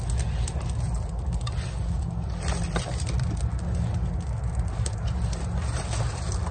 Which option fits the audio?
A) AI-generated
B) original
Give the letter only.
B